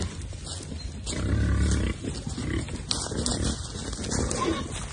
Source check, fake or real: real